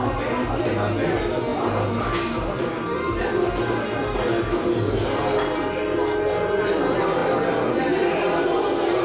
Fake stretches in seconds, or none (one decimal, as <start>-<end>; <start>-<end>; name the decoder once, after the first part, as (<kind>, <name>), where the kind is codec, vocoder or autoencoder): none